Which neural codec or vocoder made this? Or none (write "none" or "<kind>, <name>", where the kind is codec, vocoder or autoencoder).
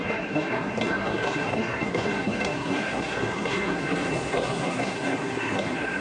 codec, SNAC